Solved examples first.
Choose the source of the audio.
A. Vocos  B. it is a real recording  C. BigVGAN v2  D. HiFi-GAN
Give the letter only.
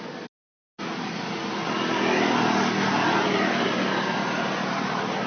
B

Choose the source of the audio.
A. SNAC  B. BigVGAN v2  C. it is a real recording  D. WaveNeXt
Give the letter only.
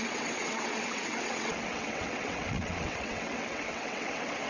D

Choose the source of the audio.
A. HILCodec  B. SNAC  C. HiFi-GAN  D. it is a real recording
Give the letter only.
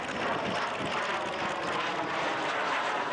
D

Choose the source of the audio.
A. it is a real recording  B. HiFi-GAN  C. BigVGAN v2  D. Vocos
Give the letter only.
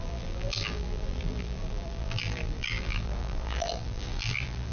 C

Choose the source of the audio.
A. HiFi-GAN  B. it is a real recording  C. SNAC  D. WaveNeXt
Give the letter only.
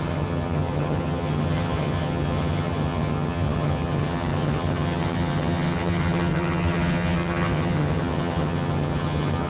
A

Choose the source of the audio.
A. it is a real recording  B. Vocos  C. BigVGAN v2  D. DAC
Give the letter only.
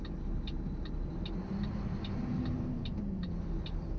A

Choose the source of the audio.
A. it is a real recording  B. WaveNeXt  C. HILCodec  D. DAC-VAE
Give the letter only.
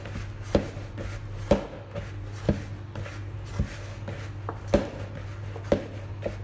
A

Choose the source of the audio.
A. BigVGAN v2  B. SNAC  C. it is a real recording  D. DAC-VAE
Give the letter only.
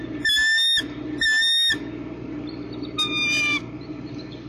C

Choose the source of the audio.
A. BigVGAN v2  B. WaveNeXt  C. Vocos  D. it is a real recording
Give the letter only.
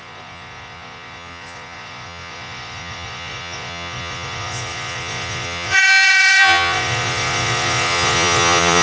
C